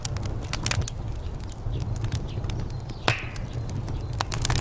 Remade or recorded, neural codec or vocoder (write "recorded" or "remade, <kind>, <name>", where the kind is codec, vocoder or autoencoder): recorded